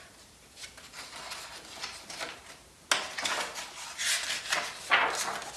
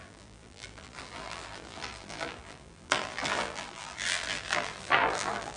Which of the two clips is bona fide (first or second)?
first